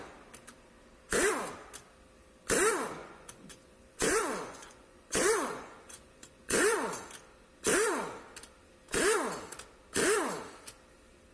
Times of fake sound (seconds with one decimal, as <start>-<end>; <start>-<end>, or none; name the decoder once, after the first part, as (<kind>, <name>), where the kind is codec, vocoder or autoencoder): 3.0-6.9 (vocoder, Vocos)